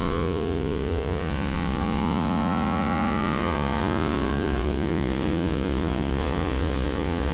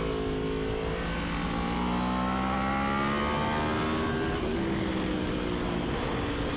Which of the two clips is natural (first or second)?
second